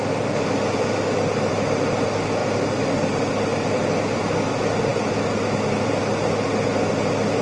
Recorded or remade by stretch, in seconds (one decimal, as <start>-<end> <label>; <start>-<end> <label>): 0.0-7.4 recorded